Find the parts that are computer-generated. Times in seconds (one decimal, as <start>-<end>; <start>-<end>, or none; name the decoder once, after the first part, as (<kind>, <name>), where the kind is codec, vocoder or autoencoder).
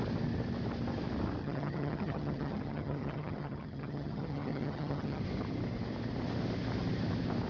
1.4-5.2 (vocoder, HiFi-GAN)